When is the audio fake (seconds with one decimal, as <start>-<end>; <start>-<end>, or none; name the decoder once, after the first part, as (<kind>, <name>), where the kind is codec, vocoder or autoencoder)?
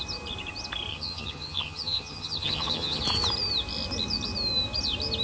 0.9-3.0 (vocoder, HiFi-GAN)